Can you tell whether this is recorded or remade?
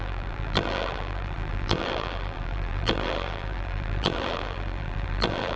remade